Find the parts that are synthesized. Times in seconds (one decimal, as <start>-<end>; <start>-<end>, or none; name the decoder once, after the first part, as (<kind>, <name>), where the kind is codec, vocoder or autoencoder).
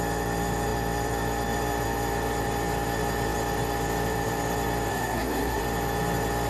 4.9-5.6 (codec, SNAC)